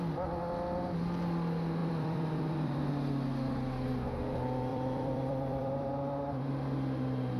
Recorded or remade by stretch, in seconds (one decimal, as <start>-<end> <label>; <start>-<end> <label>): 0.0-1.8 recorded; 1.8-2.9 remade; 2.9-4.7 recorded; 4.7-5.9 remade; 5.9-7.4 recorded